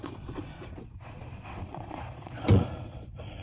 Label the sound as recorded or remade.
remade